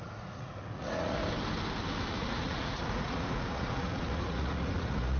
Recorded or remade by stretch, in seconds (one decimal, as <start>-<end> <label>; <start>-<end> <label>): 0.0-1.2 remade; 1.2-2.1 recorded; 2.1-5.2 remade